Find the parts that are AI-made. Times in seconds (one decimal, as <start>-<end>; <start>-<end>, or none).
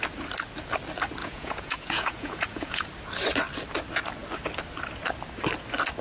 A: 1.2-2.9